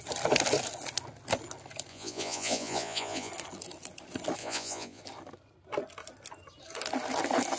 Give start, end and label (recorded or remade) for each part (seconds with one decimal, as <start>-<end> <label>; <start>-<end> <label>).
0.0-1.9 recorded; 1.9-3.3 remade; 3.3-4.4 recorded; 4.4-5.0 remade; 5.0-7.6 recorded